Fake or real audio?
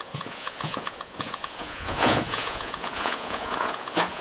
fake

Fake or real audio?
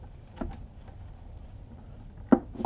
real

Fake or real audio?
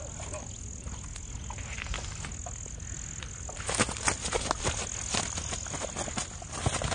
real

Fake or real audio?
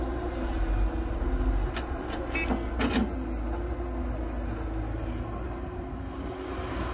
real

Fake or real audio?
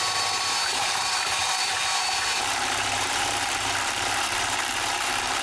fake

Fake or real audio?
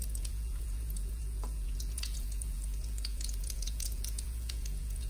fake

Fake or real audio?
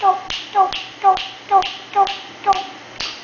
real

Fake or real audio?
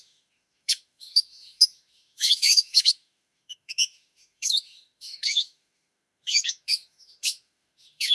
fake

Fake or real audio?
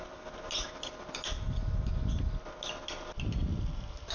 real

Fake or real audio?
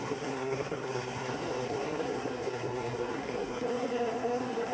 fake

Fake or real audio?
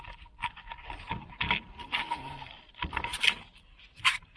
real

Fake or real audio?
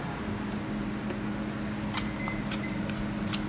real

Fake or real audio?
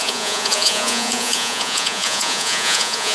fake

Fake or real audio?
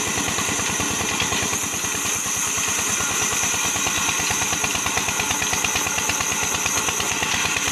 real